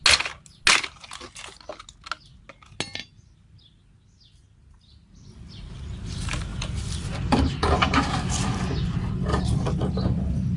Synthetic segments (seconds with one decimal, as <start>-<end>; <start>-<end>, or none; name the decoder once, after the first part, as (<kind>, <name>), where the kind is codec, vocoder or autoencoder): 6.5-9.9 (vocoder, BigVGAN v2)